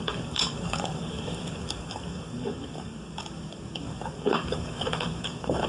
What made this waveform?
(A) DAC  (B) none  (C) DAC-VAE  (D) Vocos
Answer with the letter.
A